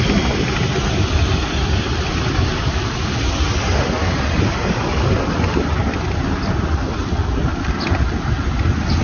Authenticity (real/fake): real